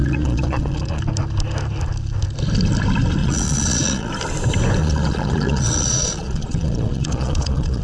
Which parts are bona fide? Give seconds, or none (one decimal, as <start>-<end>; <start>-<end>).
1.0-3.2; 4.1-4.8